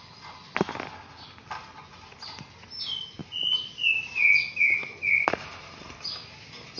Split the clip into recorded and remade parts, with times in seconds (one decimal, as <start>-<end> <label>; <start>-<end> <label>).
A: 0.0-6.8 recorded